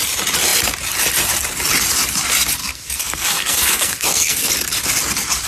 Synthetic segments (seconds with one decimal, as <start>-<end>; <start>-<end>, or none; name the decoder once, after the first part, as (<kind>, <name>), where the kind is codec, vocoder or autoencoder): 2.6-4.5 (codec, SNAC)